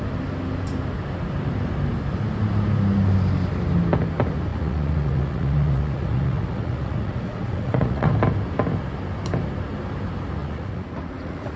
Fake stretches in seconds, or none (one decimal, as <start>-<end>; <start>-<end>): 4.5-8.1; 10.4-11.6